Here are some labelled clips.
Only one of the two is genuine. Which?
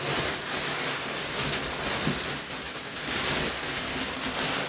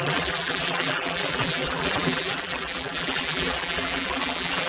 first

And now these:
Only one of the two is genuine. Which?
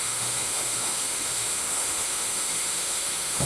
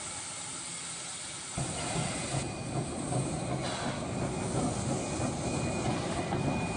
second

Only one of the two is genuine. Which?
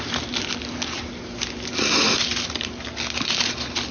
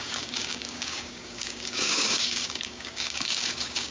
first